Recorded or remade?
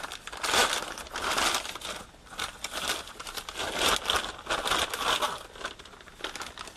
recorded